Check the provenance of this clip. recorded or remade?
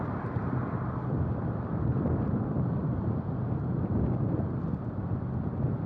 recorded